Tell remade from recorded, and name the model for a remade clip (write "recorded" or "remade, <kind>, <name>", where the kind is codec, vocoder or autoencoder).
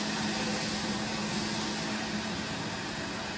recorded